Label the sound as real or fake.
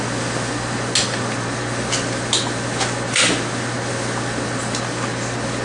real